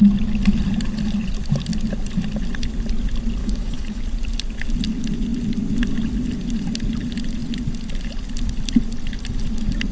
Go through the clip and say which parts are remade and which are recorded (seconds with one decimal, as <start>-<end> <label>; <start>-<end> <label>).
0.0-3.4 recorded; 3.4-4.0 remade; 4.0-9.9 recorded